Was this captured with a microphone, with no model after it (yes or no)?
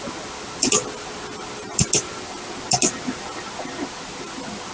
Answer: yes